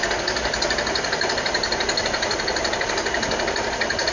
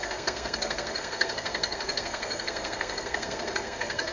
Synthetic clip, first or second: second